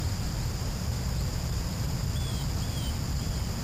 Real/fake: fake